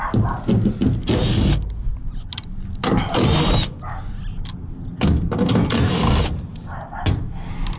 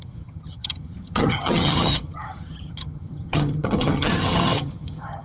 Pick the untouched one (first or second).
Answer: first